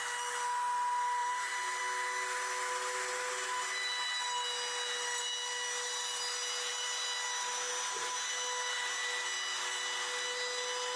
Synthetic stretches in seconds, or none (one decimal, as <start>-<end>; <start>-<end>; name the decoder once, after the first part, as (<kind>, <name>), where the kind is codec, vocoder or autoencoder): 1.2-1.8 (vocoder, BigVGAN v2)